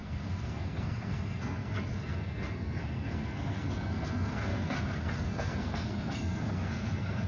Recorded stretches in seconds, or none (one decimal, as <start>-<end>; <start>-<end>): none